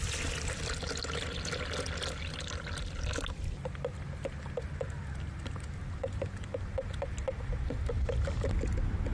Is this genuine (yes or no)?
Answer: yes